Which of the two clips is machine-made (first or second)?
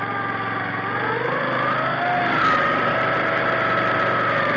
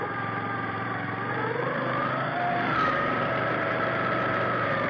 second